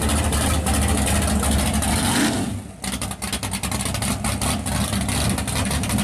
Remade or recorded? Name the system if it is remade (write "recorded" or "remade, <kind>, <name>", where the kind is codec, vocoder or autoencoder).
recorded